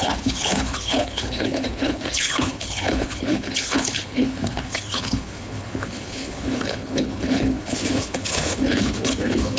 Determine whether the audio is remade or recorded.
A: remade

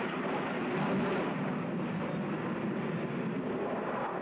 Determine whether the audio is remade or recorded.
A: recorded